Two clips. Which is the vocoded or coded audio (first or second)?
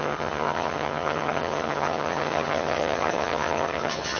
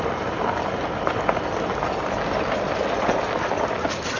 first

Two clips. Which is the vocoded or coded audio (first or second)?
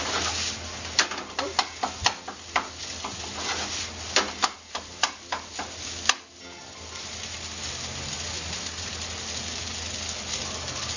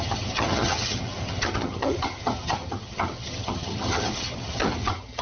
second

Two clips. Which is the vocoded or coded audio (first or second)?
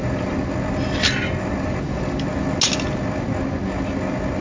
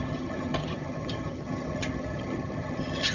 second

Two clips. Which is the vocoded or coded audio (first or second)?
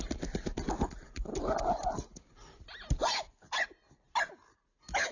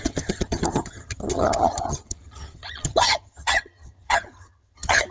second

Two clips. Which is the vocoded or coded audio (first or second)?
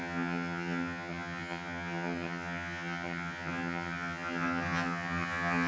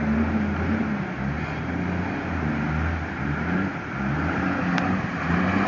first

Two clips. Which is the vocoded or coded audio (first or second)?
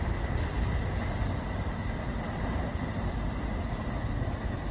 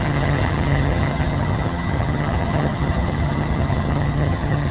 second